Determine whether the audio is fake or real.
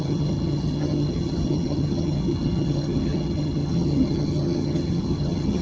fake